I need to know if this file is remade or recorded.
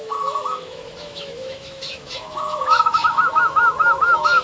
remade